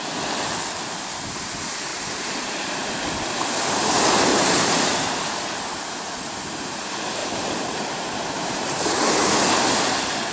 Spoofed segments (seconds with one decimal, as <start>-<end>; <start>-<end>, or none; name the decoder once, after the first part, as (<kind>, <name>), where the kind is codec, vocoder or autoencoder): 1.9-2.9 (vocoder, BigVGAN v2); 4.3-5.3; 7.2-9.3